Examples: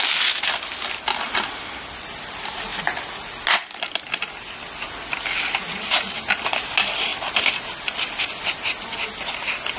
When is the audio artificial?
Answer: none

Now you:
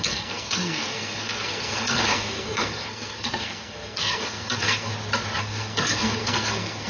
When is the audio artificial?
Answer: 0.0-4.9 (codec, SNAC); 5.4-6.9

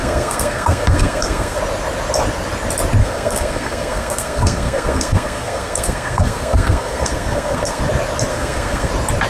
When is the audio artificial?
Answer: 0.0-1.6 (codec, SNAC); 3.0-7.8; 8.3-8.9